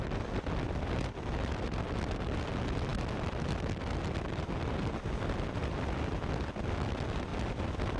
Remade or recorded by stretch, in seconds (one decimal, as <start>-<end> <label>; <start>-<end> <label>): 0.0-8.0 recorded